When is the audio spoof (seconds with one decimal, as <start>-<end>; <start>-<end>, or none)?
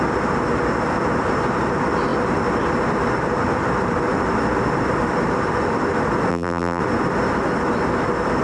6.3-6.8